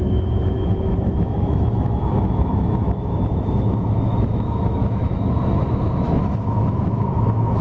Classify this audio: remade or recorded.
remade